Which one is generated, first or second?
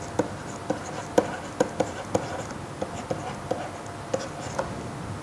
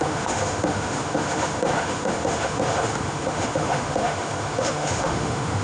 second